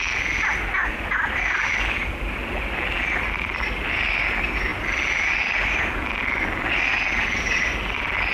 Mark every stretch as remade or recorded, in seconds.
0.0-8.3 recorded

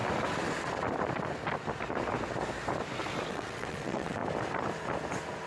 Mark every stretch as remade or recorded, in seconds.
0.0-3.3 recorded; 3.3-4.2 remade; 4.2-5.5 recorded

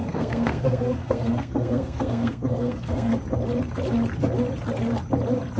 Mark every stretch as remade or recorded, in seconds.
0.0-3.1 remade; 3.1-5.6 recorded

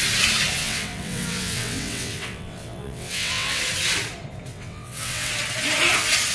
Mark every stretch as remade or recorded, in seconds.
0.0-0.6 recorded; 0.6-3.6 remade; 3.6-4.5 recorded; 4.5-5.3 remade; 5.3-6.3 recorded

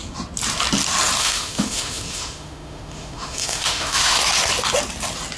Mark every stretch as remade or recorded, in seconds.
0.0-1.2 recorded; 1.2-4.2 remade; 4.2-5.4 recorded